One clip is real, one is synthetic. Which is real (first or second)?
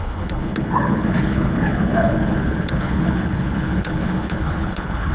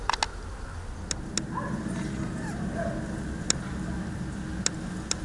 second